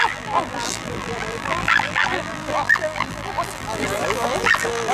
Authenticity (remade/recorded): remade